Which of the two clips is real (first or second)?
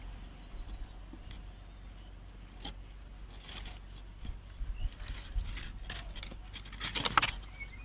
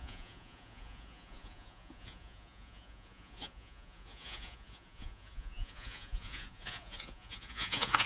first